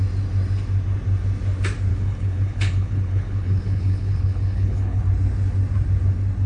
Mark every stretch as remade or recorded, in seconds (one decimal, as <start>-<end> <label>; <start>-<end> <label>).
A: 0.0-1.9 recorded; 1.9-5.0 remade; 5.0-6.5 recorded

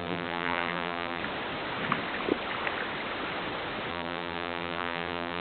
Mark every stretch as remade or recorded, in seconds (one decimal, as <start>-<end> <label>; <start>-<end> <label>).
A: 0.0-1.2 remade; 1.2-3.9 recorded; 3.9-5.4 remade

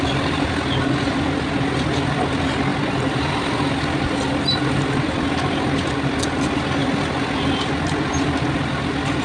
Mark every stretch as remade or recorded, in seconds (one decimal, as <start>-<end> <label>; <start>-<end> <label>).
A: 0.0-9.2 recorded

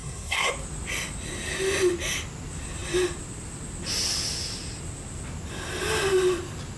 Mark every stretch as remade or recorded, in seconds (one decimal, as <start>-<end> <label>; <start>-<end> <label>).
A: 0.0-0.5 remade; 0.5-6.8 recorded

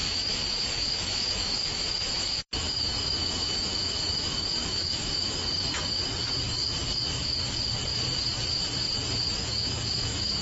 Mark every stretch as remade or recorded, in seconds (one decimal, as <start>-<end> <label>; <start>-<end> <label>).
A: 0.0-6.0 remade; 6.0-9.4 recorded; 9.4-10.4 remade

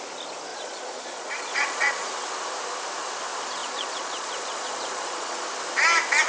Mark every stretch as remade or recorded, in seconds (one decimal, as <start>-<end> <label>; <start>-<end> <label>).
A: 0.0-0.5 recorded; 0.5-2.1 remade; 2.1-3.6 recorded; 3.6-5.5 remade; 5.5-6.3 recorded

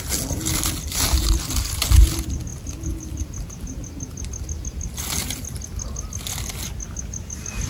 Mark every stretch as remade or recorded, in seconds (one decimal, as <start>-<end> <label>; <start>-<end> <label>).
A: 0.0-7.7 recorded